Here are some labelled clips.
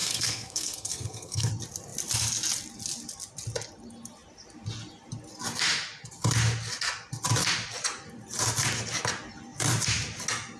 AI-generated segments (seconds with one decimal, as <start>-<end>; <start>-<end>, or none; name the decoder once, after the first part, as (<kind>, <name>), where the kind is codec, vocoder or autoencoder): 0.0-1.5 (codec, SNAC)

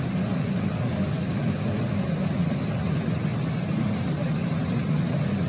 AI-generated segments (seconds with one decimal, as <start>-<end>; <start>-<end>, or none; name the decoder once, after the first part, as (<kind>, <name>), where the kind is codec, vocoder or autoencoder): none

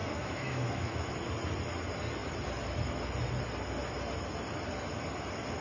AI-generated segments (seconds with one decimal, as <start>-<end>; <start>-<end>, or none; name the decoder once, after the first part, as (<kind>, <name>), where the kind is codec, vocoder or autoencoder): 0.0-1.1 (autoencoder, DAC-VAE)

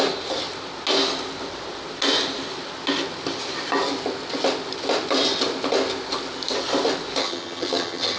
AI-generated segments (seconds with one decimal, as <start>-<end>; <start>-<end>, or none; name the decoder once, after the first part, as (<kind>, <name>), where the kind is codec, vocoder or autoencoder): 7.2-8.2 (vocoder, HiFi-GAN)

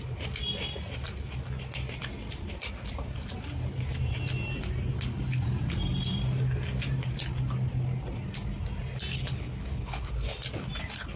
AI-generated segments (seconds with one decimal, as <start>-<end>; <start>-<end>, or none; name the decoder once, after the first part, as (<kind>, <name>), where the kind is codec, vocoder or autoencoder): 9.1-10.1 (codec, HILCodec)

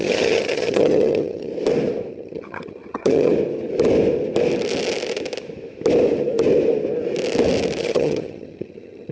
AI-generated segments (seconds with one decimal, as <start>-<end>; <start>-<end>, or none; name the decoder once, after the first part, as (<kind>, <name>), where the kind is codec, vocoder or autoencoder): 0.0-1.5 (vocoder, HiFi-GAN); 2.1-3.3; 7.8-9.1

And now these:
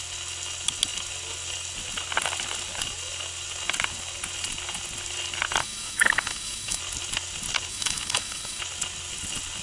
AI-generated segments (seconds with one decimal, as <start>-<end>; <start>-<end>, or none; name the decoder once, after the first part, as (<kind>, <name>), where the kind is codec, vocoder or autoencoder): 5.6-6.8 (autoencoder, DAC-VAE); 7.7-8.6